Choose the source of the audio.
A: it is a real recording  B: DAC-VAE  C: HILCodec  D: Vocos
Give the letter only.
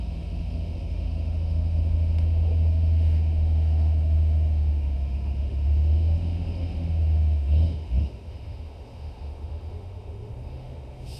B